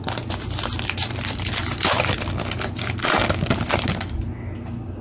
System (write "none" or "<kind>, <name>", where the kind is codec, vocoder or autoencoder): none